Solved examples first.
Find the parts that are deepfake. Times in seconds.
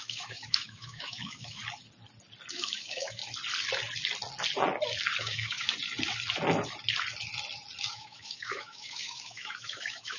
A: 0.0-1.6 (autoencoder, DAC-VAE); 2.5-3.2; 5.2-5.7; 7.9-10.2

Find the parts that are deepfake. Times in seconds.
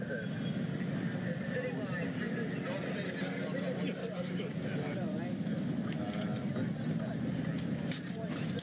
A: 4.0-4.6 (codec, DAC)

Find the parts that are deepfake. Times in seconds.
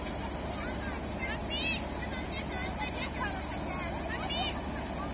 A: none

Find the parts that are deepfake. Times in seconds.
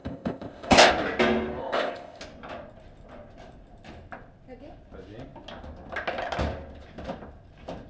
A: 0.0-0.9 (codec, ZipCodec); 1.6-2.2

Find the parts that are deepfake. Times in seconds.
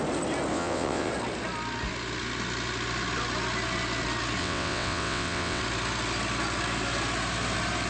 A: 0.5-1.1 (vocoder, WaveNeXt); 4.4-5.6